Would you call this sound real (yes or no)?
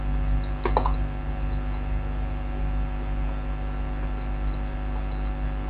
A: yes